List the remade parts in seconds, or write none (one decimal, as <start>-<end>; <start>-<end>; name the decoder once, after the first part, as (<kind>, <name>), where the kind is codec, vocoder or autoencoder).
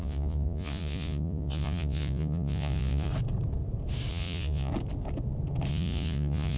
0.0-3.1 (vocoder, Vocos); 4.1-4.7; 5.7-6.6